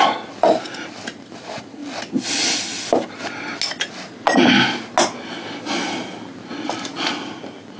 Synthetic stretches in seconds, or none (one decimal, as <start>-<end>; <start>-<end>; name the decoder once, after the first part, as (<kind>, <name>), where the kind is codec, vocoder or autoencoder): none